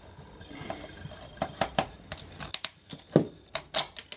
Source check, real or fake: real